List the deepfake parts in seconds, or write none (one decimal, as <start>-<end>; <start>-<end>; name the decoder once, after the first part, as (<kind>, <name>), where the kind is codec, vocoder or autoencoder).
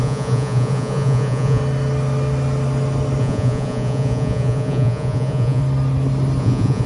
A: 0.0-1.6 (vocoder, Vocos); 3.2-5.6; 6.4-6.9